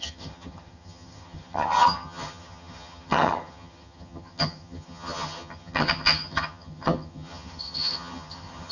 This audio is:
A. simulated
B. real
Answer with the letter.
A